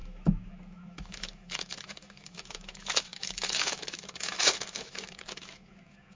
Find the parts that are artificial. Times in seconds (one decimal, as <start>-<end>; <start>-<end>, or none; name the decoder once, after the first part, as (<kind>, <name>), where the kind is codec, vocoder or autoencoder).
0.0-6.2 (autoencoder, DAC-VAE)